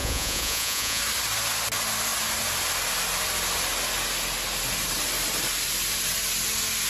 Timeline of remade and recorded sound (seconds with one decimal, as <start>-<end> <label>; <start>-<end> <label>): 0.0-1.0 remade; 1.0-6.9 recorded